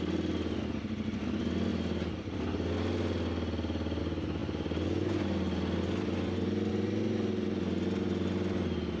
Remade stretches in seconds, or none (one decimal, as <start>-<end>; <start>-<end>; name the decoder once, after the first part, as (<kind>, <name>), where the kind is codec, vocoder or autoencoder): none